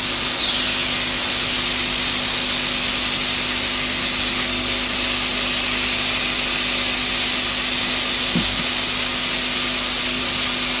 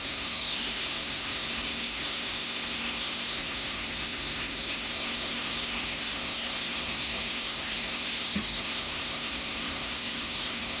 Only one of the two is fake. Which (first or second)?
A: second